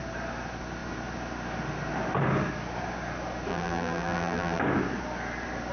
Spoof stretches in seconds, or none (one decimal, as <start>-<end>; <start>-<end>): 3.5-4.6